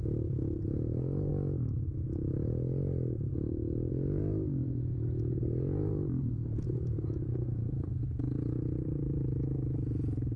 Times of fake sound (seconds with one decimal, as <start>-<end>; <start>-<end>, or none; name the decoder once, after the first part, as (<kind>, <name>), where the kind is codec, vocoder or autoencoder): 0.0-1.3 (vocoder, Vocos); 3.9-10.4